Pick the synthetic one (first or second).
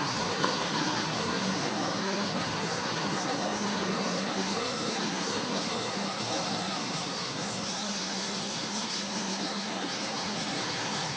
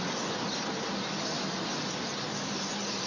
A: first